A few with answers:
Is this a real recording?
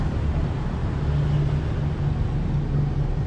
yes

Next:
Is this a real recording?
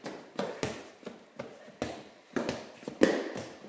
yes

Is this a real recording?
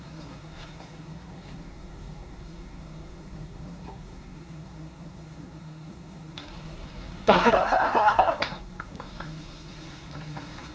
no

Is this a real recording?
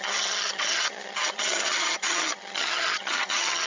no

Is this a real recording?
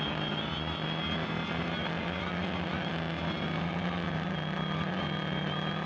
yes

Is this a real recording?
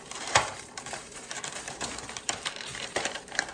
no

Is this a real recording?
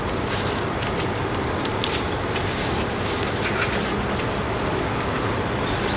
yes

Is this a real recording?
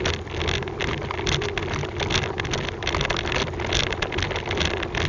yes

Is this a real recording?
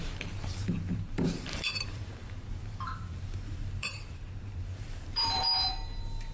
no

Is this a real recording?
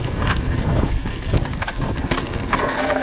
no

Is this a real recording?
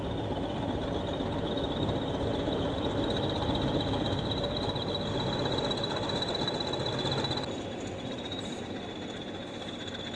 yes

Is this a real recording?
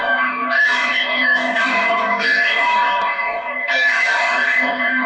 no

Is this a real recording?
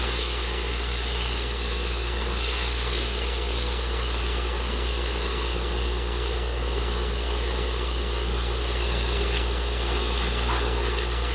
no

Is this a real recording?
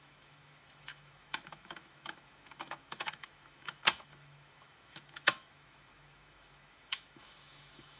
no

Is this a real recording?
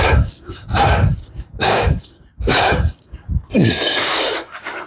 no